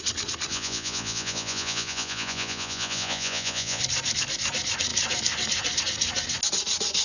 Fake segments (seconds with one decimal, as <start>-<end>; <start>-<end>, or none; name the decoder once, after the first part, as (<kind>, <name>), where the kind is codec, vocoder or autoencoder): 0.5-3.8 (vocoder, Vocos)